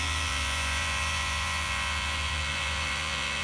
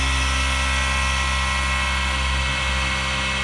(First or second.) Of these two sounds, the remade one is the first